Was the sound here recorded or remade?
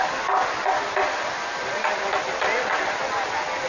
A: recorded